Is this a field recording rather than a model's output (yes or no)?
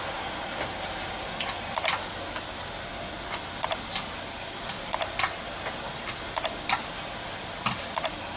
yes